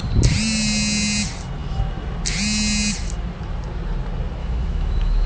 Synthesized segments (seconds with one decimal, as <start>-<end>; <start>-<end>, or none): 4.4-5.3